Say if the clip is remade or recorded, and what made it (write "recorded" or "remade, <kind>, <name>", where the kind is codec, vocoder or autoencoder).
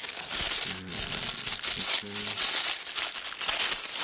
recorded